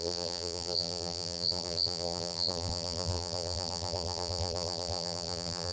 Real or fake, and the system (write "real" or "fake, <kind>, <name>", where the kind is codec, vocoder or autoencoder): fake, vocoder, BigVGAN v2